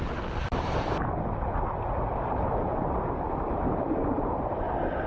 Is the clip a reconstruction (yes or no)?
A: no